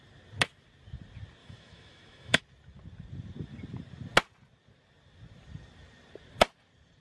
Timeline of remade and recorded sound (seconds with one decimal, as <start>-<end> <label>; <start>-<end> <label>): 0.0-1.4 recorded; 1.4-2.4 remade; 2.4-7.0 recorded